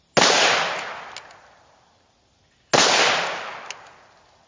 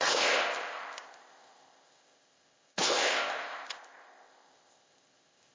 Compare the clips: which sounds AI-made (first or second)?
second